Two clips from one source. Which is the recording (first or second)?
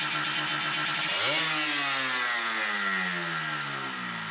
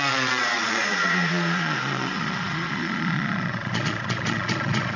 first